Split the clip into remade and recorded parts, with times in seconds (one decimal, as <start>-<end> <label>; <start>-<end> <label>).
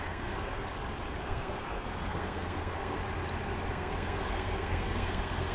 0.0-0.7 remade; 0.7-1.2 recorded; 1.2-3.0 remade; 3.0-3.7 recorded; 3.7-5.5 remade